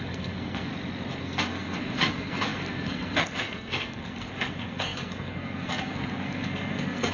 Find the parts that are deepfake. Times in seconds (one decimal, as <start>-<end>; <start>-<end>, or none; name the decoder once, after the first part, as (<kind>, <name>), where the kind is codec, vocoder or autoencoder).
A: 0.0-0.7 (codec, SNAC); 1.2-7.1